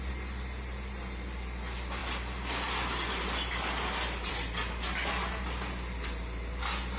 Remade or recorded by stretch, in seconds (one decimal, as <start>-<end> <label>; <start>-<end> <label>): 0.0-7.0 recorded